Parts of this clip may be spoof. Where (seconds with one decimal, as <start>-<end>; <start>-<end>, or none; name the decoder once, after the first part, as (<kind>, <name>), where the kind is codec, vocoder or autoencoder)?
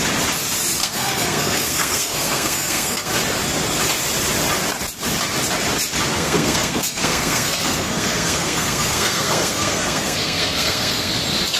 0.8-3.1 (codec, SNAC); 6.1-11.1